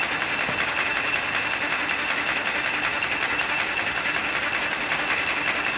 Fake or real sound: real